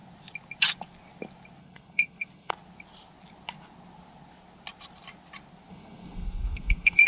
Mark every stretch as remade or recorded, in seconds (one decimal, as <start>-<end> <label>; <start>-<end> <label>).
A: 0.0-1.6 recorded; 1.6-2.5 remade; 2.5-5.7 recorded; 5.7-7.1 remade